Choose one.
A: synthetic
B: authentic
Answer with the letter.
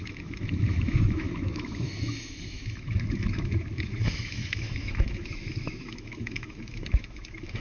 A